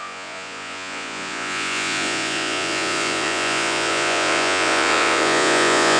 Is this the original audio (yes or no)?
no